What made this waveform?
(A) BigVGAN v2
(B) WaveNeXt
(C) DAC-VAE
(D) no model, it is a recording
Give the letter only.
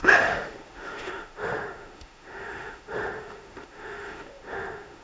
C